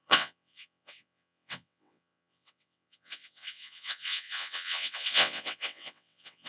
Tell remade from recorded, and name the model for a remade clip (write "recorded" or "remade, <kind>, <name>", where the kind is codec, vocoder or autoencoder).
remade, vocoder, WaveNeXt